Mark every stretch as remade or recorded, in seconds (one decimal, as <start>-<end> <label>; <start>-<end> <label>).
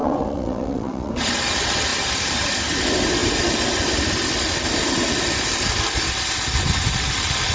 0.0-1.1 remade; 1.1-7.5 recorded